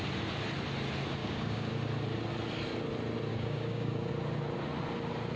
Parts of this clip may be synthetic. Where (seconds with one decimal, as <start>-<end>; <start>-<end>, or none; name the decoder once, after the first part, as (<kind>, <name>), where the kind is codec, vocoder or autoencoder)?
1.2-1.7 (codec, DAC); 3.3-4.1